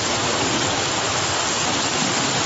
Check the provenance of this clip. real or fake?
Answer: real